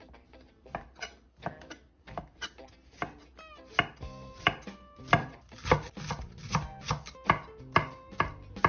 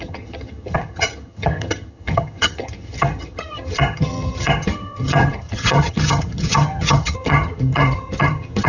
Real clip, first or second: first